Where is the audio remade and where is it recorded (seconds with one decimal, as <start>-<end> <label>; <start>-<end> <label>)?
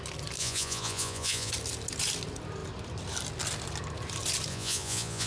0.0-0.4 recorded; 0.4-1.5 remade; 1.5-4.5 recorded; 4.5-5.3 remade